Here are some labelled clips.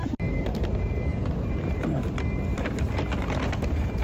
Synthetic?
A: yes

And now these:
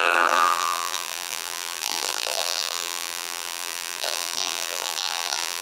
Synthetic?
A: yes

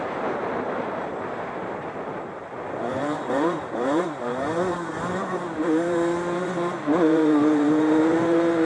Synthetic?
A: yes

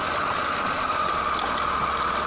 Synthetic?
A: yes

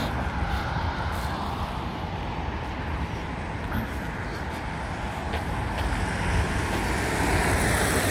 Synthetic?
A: no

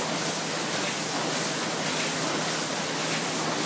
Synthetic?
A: no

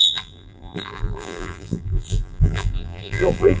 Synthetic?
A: yes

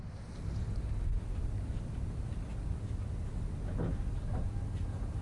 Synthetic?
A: no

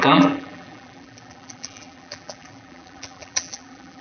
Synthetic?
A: yes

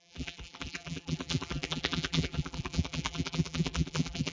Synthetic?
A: yes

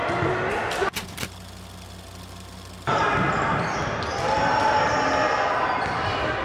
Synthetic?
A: no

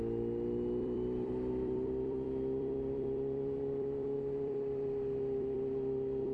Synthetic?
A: yes